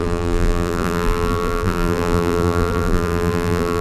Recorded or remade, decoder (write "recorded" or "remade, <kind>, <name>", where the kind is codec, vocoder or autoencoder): remade, vocoder, BigVGAN v2